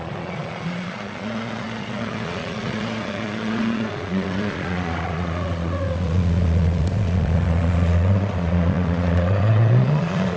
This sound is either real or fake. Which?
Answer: fake